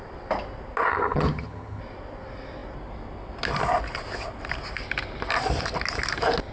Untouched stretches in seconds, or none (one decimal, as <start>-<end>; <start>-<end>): 0.0-0.9; 1.8-6.5